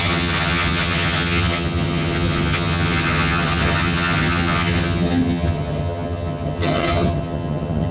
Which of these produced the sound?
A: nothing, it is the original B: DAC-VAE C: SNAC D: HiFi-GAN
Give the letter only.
D